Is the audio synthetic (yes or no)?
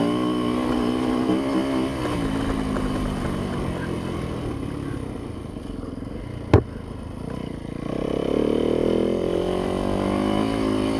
no